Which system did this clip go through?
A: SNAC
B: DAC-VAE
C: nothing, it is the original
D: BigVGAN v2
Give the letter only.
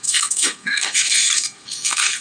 A